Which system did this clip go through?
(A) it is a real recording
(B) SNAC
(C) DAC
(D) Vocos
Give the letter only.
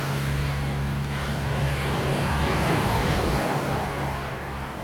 C